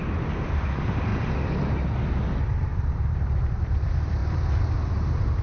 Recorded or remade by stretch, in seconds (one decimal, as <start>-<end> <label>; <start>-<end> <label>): 0.0-1.1 remade; 1.1-2.0 recorded; 2.0-4.2 remade; 4.2-4.9 recorded; 4.9-5.4 remade